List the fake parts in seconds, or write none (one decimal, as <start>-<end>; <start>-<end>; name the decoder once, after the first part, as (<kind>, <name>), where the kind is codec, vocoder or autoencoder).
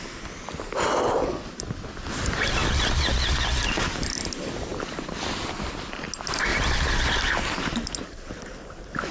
6.5-7.3 (vocoder, BigVGAN v2)